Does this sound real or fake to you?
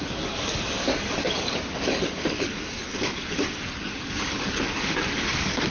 fake